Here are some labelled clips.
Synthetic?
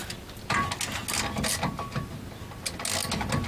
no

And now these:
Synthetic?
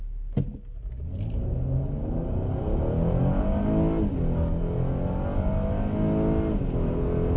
no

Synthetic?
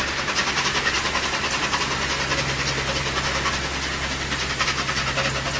no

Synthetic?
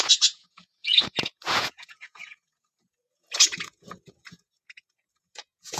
yes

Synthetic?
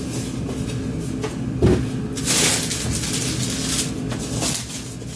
no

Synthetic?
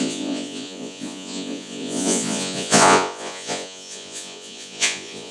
yes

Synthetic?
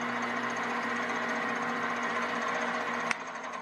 no